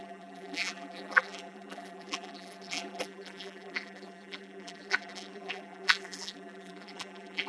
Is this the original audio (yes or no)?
no